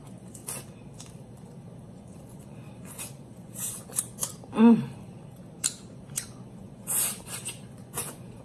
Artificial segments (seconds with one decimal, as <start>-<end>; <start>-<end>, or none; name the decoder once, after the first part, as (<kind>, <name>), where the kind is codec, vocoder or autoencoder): 0.0-0.4 (vocoder, Vocos); 1.9-4.3; 5.9-8.4